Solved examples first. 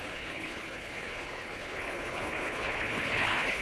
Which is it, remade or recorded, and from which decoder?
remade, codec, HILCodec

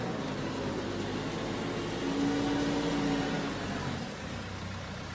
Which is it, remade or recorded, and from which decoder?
recorded